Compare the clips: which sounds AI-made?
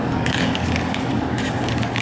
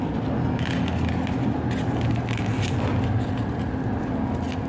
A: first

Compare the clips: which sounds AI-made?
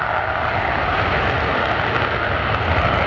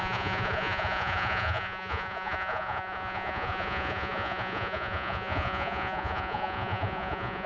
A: second